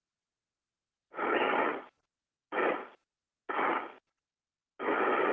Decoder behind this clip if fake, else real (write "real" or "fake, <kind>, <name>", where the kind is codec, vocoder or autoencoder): real